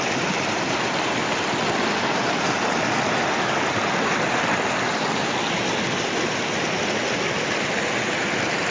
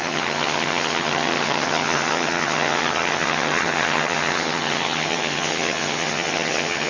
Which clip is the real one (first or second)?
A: first